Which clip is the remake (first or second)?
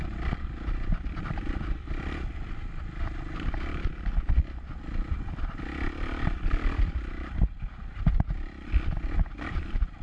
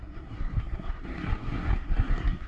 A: second